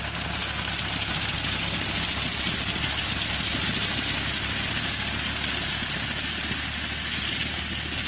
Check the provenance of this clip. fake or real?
real